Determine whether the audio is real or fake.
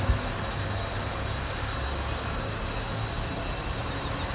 real